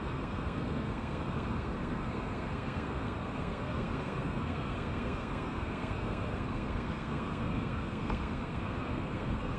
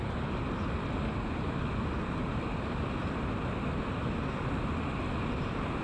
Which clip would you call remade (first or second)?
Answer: first